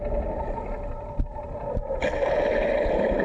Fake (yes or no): no